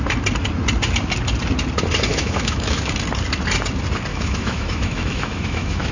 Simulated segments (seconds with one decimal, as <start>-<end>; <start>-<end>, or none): 2.1-2.9; 4.1-5.9